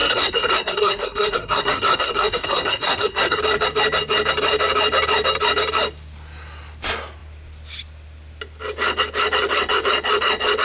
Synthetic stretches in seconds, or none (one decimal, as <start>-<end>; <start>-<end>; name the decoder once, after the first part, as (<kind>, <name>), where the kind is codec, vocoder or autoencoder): 0.0-3.4 (codec, SNAC)